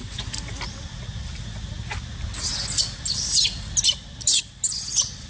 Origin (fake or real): real